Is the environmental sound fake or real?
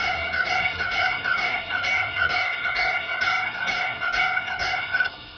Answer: fake